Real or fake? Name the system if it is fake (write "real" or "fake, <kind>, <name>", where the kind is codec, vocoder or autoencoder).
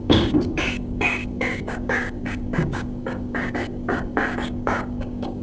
fake, codec, DAC